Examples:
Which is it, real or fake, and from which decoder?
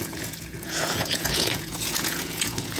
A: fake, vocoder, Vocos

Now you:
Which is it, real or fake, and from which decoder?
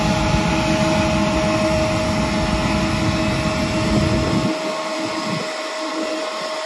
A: real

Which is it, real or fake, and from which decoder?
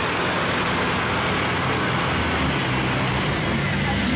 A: real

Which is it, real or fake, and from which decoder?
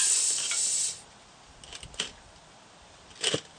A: real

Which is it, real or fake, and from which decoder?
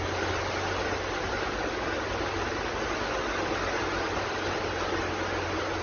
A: real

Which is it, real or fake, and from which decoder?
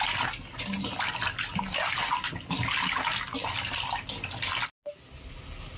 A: real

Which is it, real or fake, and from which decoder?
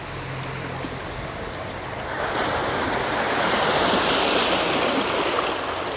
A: real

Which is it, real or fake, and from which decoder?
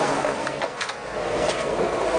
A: fake, codec, SNAC